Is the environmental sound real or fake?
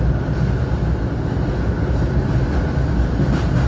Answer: real